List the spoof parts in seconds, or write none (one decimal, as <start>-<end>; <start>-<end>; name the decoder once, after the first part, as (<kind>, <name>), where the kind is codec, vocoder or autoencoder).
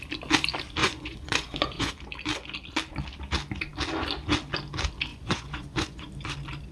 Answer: 0.8-1.9 (vocoder, Vocos); 5.1-6.1